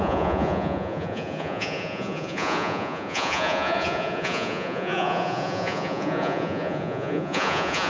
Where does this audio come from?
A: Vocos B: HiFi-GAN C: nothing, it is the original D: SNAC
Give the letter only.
A